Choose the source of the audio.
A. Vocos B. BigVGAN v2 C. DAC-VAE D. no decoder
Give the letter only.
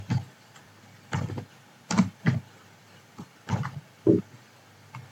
D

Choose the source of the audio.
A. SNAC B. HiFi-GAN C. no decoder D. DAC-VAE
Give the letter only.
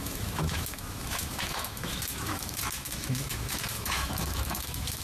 D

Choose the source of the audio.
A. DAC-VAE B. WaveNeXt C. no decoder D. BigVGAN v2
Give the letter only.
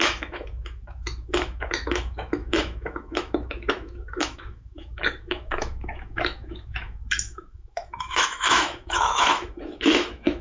A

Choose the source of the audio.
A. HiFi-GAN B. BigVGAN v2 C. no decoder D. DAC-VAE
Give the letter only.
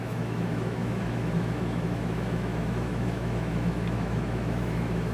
D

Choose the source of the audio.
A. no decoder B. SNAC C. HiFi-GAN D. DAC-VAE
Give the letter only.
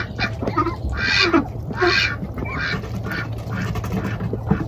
A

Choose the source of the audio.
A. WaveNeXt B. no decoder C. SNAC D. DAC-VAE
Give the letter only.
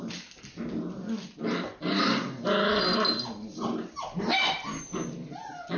B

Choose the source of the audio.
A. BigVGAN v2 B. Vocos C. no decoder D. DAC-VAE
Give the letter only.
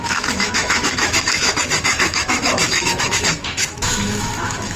D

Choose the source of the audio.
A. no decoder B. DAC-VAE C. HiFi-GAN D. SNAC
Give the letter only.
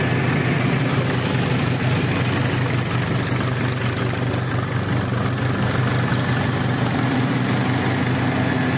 A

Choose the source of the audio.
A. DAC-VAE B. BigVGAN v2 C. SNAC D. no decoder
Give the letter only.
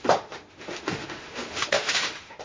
A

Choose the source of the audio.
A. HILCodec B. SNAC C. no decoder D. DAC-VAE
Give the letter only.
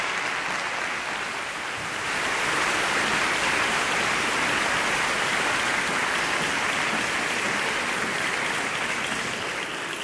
C